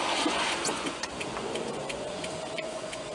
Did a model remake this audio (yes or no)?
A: yes